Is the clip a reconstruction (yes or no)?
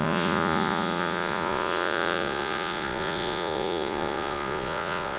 yes